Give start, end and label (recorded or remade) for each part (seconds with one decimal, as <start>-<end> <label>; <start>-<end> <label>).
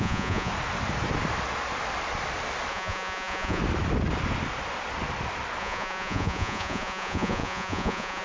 0.0-0.5 remade; 0.5-2.7 recorded; 2.7-3.6 remade; 3.6-5.6 recorded; 5.6-8.2 remade